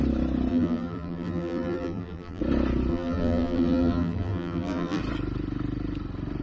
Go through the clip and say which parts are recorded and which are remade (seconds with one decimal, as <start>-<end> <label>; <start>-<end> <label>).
0.0-0.5 recorded; 0.5-2.4 remade; 2.4-2.9 recorded; 2.9-5.0 remade; 5.0-6.4 recorded